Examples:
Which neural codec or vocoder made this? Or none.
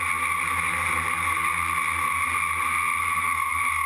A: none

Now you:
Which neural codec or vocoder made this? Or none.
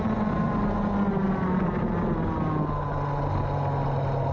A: none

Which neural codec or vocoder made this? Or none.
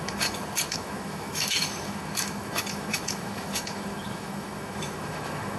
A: autoencoder, DAC-VAE